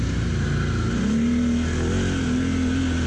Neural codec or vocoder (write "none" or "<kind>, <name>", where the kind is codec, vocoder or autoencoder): none